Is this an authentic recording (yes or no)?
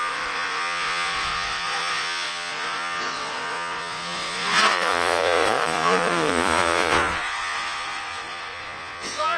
no